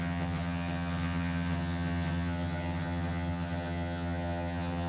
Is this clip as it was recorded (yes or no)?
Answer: no